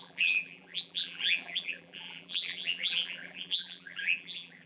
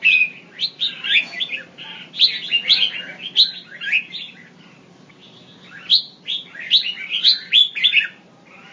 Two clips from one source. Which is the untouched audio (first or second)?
second